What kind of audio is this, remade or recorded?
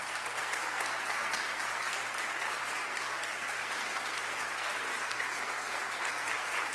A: remade